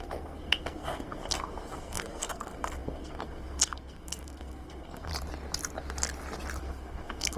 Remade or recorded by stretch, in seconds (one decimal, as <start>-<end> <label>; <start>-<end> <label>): 0.0-5.1 remade; 5.1-6.6 recorded; 6.6-7.4 remade